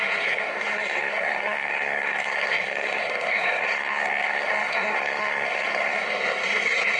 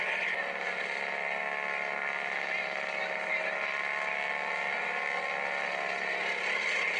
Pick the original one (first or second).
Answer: second